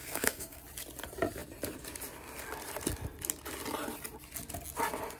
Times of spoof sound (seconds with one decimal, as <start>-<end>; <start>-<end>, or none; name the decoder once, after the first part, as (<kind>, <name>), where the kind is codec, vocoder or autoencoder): 0.0-0.6 (codec, SNAC)